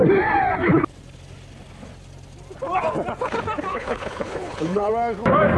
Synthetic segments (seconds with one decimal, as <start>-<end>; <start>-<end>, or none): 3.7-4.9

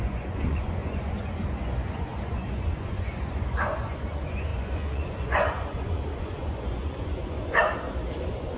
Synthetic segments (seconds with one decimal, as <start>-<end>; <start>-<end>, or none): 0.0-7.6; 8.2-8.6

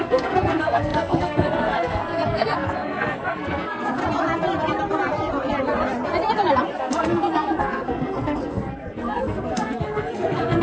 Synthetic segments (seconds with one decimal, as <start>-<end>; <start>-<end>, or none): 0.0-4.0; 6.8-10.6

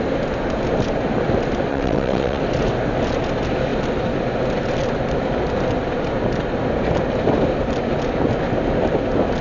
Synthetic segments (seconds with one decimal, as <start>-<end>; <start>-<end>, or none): 1.7-2.4

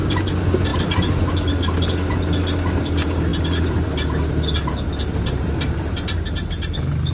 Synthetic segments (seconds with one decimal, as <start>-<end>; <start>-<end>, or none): none